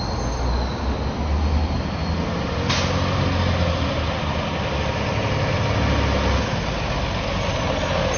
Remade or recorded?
recorded